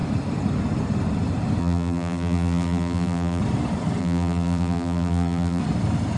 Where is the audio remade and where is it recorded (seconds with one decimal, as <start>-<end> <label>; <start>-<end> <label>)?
0.0-1.6 recorded; 1.6-3.4 remade; 3.4-4.0 recorded; 4.0-5.6 remade; 5.6-6.2 recorded